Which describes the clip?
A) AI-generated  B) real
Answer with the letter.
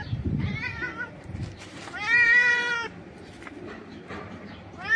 A